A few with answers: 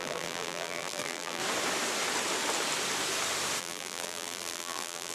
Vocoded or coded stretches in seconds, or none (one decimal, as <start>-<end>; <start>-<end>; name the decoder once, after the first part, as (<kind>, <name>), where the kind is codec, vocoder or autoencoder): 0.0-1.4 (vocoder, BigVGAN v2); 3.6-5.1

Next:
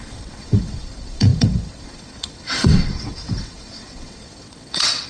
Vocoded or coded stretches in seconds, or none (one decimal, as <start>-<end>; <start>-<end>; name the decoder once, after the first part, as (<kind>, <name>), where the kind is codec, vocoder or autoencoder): 0.0-5.1 (vocoder, WaveNeXt)

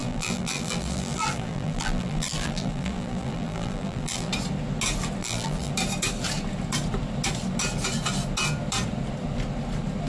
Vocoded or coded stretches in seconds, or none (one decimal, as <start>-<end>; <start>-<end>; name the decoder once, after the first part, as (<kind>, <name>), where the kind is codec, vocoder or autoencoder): 0.0-4.3 (vocoder, BigVGAN v2); 5.2-5.7

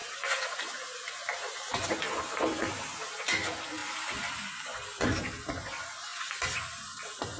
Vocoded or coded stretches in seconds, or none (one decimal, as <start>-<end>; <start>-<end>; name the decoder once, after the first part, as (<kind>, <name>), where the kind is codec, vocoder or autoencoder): 0.0-1.9 (vocoder, BigVGAN v2)

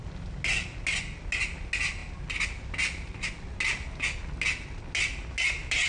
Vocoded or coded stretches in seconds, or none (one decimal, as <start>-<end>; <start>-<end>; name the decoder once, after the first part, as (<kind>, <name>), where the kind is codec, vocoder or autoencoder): none

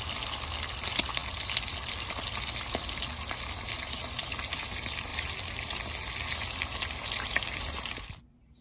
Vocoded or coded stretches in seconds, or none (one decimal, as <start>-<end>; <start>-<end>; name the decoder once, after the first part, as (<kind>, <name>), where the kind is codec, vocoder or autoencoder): none

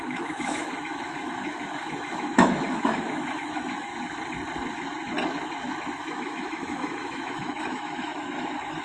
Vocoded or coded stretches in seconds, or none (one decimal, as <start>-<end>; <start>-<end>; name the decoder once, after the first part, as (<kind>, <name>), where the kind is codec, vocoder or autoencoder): 0.0-3.9 (autoencoder, DAC-VAE); 5.9-8.8